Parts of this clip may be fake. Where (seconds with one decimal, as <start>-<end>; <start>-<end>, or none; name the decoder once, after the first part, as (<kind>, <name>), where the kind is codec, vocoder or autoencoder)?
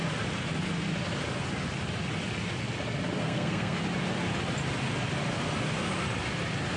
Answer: 3.2-3.8 (codec, SNAC)